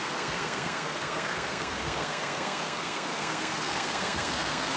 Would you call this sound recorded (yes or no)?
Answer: no